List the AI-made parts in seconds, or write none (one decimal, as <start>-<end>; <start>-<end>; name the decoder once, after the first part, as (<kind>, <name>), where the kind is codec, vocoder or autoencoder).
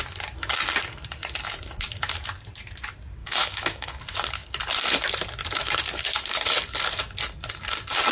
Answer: 3.2-4.0 (autoencoder, DAC-VAE)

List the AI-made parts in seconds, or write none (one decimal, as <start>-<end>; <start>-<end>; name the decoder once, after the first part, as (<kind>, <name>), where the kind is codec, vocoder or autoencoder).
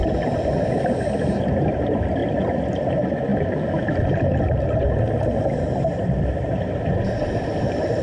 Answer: 0.8-2.2 (vocoder, BigVGAN v2); 2.8-8.0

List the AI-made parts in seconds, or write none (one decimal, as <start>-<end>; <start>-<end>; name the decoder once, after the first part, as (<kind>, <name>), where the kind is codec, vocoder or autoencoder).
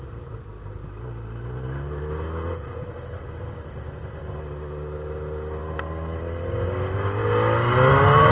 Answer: none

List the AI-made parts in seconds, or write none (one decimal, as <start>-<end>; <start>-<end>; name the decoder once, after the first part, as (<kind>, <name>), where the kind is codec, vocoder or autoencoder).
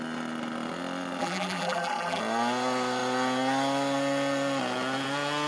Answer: 1.2-2.2 (vocoder, BigVGAN v2)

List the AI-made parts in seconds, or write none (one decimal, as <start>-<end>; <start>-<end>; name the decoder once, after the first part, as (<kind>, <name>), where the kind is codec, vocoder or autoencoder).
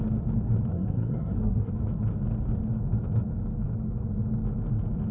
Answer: 0.7-1.7 (codec, SNAC)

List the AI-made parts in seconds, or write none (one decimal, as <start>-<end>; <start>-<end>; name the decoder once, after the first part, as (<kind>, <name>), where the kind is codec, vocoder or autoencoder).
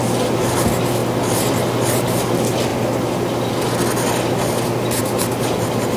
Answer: none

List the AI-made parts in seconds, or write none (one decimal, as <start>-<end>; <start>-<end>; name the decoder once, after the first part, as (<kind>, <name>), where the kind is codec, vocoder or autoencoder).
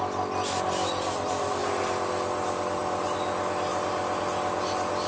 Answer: none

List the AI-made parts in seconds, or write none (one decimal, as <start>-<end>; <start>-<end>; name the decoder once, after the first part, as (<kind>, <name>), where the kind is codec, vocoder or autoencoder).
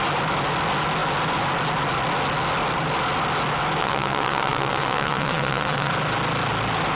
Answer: 3.8-5.9 (vocoder, WaveNeXt)